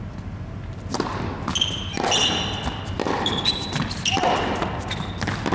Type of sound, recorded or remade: recorded